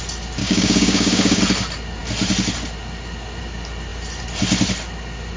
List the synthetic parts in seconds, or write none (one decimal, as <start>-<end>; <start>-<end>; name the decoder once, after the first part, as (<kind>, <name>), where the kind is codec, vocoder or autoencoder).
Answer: 0.4-1.4 (codec, DAC)